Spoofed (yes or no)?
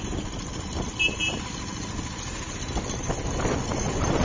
no